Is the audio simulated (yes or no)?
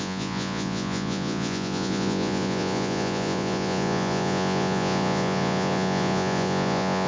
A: yes